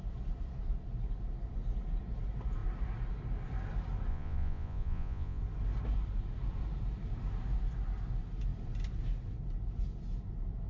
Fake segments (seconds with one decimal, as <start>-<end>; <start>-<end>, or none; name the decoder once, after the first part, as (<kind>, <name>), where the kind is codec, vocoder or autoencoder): 4.1-5.4 (vocoder, Vocos)